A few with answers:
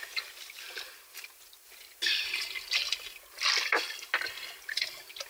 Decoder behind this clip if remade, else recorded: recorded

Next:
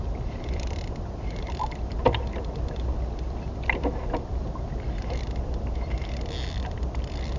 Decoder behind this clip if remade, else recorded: recorded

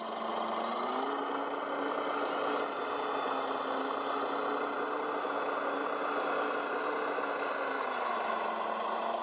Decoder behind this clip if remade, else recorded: recorded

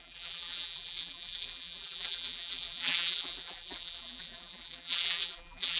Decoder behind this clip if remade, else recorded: remade, vocoder, BigVGAN v2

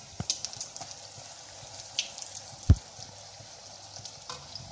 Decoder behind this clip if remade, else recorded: recorded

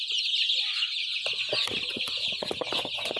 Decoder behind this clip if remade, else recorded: recorded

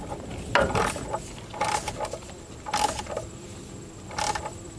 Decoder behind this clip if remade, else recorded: recorded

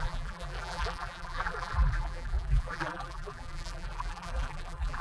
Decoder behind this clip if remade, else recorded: remade, vocoder, BigVGAN v2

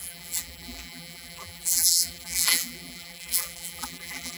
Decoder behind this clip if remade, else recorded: remade, vocoder, BigVGAN v2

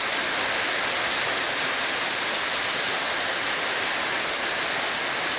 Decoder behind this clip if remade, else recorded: recorded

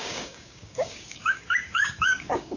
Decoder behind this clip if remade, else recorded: remade, codec, DAC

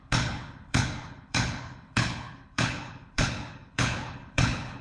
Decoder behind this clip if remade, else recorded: remade, codec, HILCodec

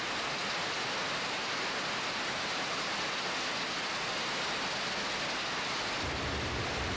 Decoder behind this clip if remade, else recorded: recorded